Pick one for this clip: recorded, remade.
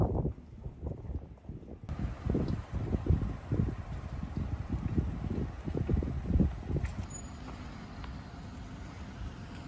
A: recorded